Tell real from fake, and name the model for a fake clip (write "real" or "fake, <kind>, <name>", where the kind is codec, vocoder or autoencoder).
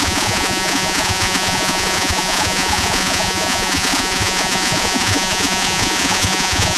fake, vocoder, Vocos